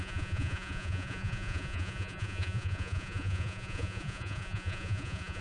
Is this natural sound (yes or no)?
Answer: no